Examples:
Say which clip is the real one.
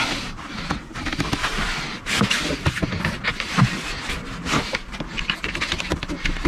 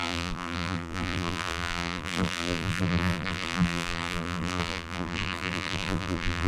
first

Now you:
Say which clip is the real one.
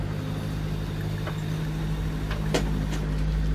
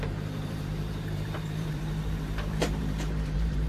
first